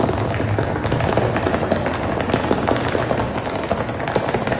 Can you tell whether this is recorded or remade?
recorded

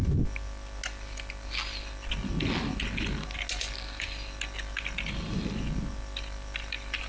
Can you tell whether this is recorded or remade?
recorded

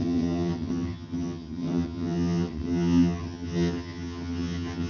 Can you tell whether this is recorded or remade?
remade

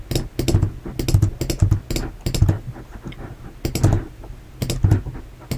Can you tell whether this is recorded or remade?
recorded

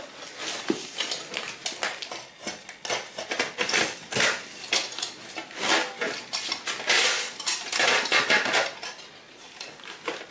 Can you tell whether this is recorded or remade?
recorded